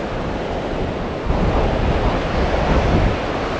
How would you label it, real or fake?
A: real